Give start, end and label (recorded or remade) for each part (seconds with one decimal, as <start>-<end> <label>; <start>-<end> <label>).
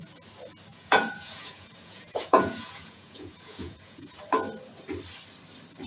0.0-0.7 recorded; 0.7-4.2 remade; 4.2-5.9 recorded